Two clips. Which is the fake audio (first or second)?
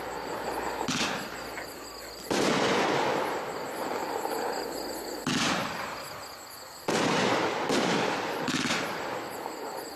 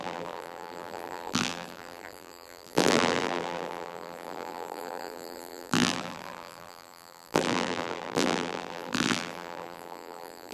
second